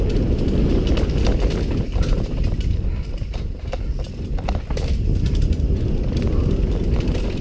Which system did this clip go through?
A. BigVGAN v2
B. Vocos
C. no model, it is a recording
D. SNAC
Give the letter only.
C